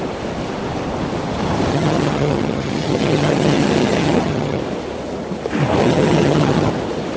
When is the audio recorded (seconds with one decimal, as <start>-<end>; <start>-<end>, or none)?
0.0-1.7; 4.6-5.8; 6.7-7.2